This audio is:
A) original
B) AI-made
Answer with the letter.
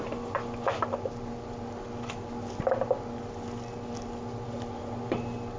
A